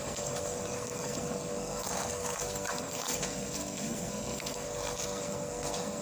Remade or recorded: remade